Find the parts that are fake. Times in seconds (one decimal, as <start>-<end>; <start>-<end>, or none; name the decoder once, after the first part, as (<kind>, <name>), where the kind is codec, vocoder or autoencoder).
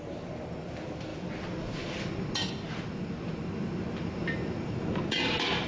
none